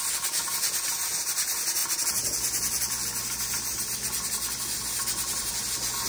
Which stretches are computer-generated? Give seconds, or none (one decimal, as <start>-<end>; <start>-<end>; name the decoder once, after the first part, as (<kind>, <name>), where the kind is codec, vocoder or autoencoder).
none